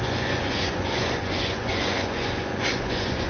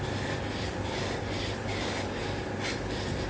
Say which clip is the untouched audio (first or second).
second